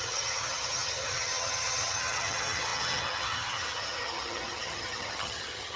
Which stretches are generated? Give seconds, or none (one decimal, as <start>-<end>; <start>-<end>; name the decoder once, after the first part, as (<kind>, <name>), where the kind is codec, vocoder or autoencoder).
0.0-5.8 (vocoder, HiFi-GAN)